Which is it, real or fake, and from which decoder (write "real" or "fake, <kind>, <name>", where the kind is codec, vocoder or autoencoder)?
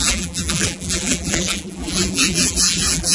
fake, vocoder, BigVGAN v2